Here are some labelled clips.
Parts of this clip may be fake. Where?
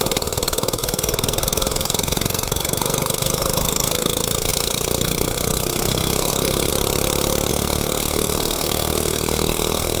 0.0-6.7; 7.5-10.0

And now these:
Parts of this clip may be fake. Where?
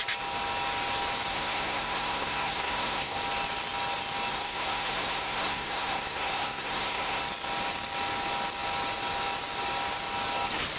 1.3-3.2; 4.3-7.2